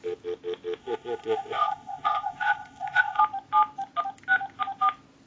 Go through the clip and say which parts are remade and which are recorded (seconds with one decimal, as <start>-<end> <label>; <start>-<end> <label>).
0.0-0.8 recorded; 0.8-3.2 remade; 3.2-5.3 recorded